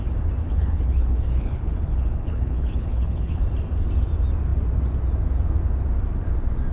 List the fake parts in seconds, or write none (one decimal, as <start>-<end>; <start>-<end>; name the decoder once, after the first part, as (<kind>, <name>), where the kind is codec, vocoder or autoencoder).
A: 0.4-3.4 (codec, HILCodec)